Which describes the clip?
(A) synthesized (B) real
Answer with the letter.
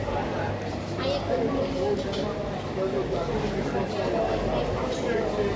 B